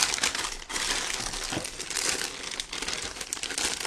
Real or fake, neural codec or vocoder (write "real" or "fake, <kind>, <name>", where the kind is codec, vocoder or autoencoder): real